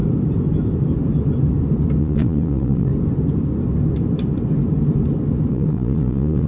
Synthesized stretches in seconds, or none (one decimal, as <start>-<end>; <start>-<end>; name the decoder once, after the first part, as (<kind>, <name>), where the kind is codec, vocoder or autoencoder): 2.0-2.9 (vocoder, Vocos); 5.5-6.5